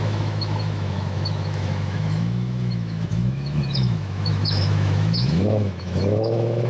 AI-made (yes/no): yes